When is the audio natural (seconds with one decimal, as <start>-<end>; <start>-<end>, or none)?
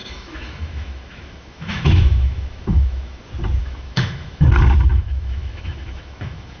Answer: 3.2-3.6; 4.5-4.9